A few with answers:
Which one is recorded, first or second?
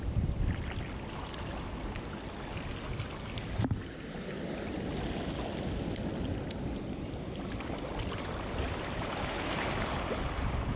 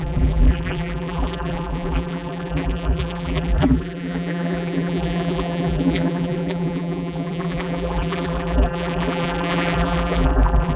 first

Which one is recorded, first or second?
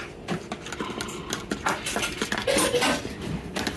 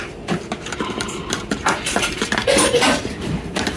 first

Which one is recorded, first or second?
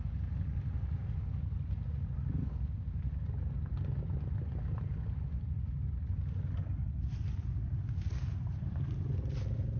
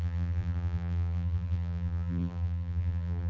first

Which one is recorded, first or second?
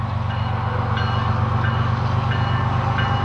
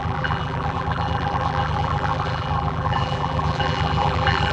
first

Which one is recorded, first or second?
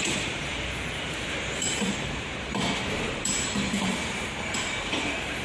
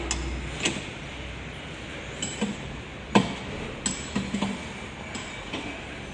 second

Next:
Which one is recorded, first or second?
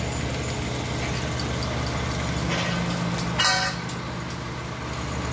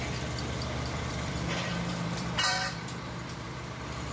first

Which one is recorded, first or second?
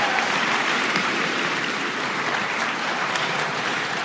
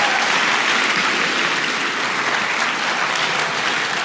second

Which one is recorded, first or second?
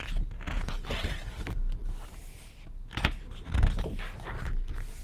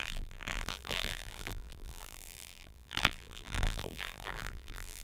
first